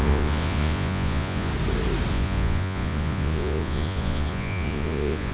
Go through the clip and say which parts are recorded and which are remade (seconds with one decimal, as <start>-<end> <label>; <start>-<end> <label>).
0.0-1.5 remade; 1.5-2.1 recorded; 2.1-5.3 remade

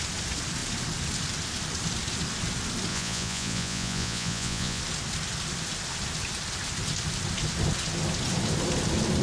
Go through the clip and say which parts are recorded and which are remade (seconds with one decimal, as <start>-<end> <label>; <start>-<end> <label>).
0.0-2.9 recorded; 2.9-4.8 remade; 4.8-9.2 recorded

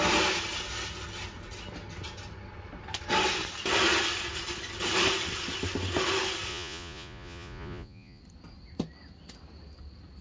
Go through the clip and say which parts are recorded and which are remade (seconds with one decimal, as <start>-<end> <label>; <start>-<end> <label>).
0.0-6.5 recorded; 6.5-8.2 remade; 8.2-10.2 recorded

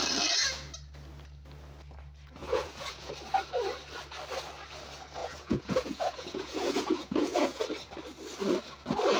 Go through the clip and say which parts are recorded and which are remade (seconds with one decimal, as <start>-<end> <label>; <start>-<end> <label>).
0.0-2.4 recorded; 2.4-3.1 remade; 3.1-5.2 recorded; 5.2-7.6 remade; 7.6-9.2 recorded

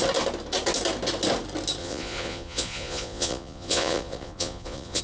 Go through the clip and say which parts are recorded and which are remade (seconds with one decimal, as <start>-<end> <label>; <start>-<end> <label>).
0.0-1.8 recorded; 1.8-5.0 remade

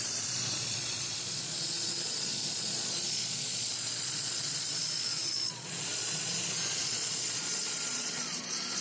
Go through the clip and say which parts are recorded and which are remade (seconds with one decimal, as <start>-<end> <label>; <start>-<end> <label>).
0.0-8.8 remade

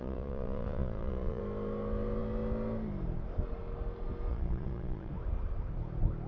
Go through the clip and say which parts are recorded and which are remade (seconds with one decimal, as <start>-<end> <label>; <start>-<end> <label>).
0.0-1.4 remade; 1.4-4.3 recorded; 4.3-5.1 remade; 5.1-6.3 recorded

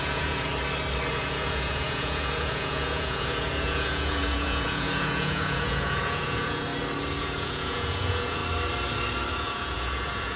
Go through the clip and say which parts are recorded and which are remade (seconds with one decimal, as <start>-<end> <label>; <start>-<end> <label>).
0.0-0.5 remade; 0.5-1.1 recorded; 1.1-6.7 remade; 6.7-7.2 recorded; 7.2-8.4 remade; 8.4-9.3 recorded; 9.3-10.4 remade